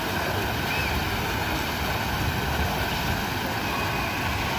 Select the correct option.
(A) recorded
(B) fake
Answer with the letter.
A